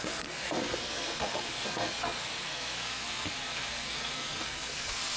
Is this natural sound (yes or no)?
no